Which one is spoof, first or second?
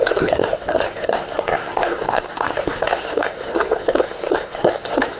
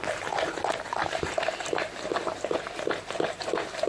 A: first